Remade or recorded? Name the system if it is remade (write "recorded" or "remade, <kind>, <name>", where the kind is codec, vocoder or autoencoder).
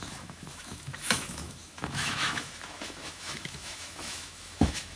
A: remade, autoencoder, DAC-VAE